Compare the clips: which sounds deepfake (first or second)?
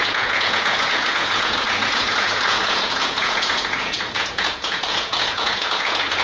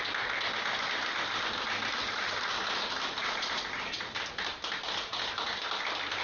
first